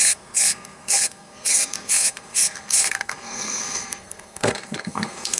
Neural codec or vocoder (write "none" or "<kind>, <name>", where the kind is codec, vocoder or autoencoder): codec, SNAC